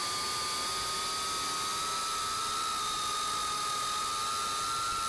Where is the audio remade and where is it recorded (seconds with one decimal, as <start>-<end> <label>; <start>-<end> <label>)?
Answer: 0.0-5.1 recorded